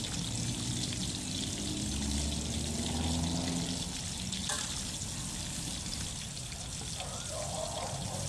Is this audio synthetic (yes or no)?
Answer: no